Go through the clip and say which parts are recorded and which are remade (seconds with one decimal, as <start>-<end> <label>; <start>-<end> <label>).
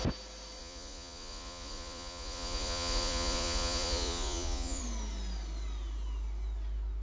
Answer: 0.0-0.6 recorded; 0.6-4.8 remade; 4.8-7.0 recorded